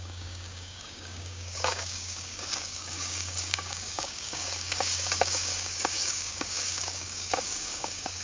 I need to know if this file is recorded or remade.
remade